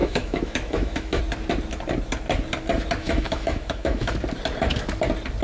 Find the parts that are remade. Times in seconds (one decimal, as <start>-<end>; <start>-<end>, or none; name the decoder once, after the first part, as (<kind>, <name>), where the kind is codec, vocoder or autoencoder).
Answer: 0.0-1.2 (autoencoder, DAC-VAE); 3.0-4.1